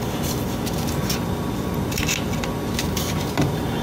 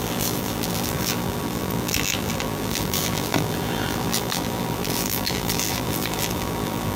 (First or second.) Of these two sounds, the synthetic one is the second